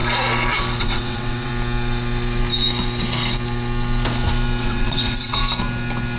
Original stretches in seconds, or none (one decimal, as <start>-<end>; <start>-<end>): 0.0-0.8; 1.5-4.6; 5.4-6.2